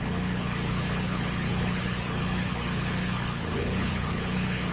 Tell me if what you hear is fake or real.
fake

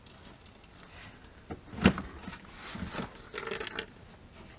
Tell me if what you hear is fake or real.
real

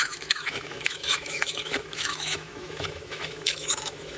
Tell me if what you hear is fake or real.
fake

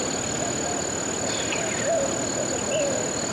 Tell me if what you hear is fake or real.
real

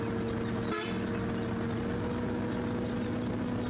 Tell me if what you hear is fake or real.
real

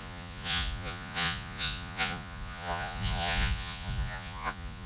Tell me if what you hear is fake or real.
fake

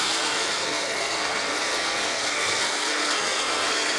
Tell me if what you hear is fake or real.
fake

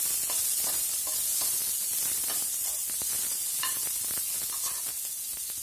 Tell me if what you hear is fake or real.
real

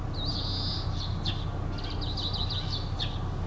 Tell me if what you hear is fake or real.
real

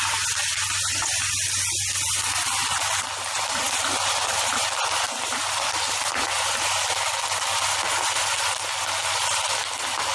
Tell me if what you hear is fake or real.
real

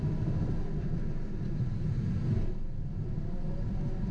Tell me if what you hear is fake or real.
real